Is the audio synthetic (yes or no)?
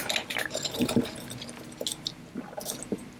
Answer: no